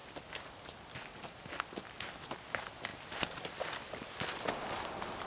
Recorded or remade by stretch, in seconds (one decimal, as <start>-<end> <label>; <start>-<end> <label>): 0.0-5.3 recorded